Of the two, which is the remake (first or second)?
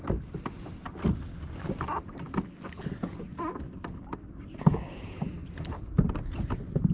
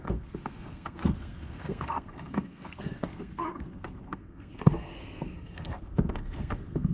second